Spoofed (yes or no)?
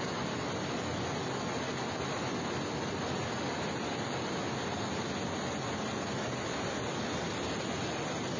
no